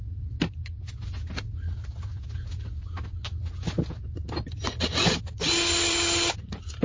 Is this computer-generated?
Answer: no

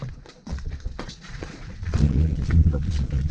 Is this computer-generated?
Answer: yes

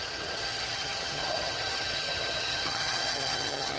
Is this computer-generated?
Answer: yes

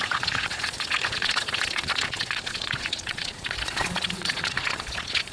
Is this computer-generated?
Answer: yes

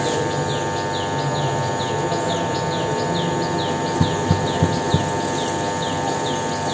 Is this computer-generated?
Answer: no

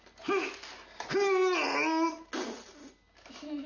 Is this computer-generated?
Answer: no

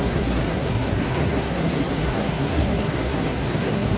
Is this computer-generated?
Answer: yes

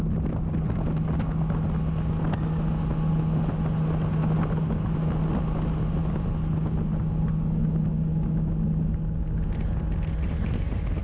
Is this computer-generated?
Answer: no